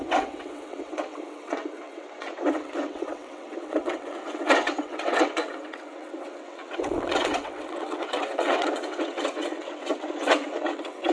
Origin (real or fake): fake